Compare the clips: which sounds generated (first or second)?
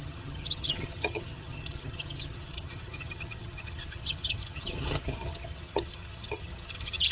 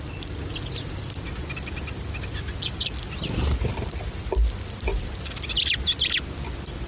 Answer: first